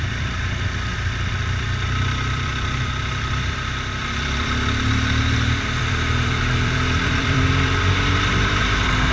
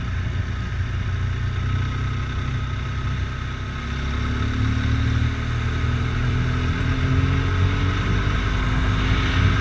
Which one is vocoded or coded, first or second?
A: first